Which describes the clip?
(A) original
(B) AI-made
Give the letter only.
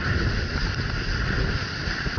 A